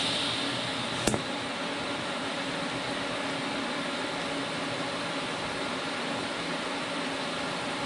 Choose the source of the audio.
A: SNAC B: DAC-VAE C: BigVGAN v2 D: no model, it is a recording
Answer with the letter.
C